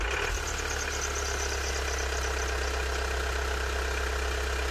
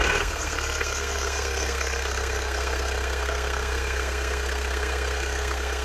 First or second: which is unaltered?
first